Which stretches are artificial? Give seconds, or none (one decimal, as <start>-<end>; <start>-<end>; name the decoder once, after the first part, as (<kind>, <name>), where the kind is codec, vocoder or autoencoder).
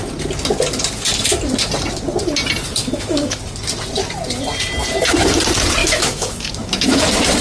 2.8-3.4 (autoencoder, DAC-VAE); 5.8-7.0